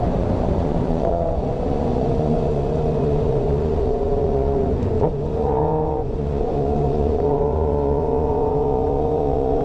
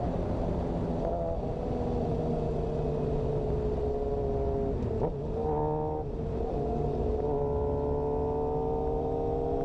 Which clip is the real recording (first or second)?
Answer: second